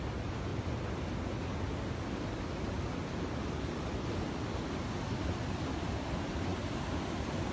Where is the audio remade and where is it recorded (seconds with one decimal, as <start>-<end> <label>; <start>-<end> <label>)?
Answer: 0.0-7.5 recorded

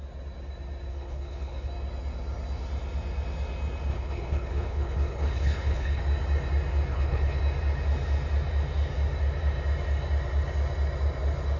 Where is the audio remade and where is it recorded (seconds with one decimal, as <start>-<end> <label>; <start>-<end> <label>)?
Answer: 0.0-0.9 recorded; 0.9-1.7 remade; 1.7-3.9 recorded; 3.9-6.0 remade; 6.0-6.9 recorded; 6.9-7.4 remade; 7.4-11.6 recorded